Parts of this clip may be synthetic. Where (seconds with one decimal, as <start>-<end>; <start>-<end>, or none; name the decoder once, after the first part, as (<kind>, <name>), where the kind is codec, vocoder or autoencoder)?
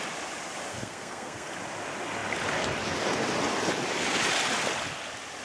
0.7-1.5 (codec, SNAC)